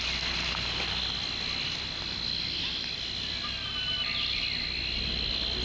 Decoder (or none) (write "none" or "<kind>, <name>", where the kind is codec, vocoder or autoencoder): none